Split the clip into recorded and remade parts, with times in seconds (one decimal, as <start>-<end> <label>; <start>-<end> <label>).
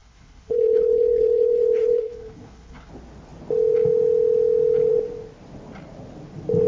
0.0-2.9 remade; 2.9-6.7 recorded